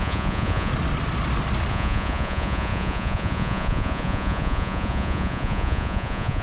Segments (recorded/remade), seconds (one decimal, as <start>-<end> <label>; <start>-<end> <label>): 0.0-0.7 remade; 0.7-1.7 recorded; 1.7-6.4 remade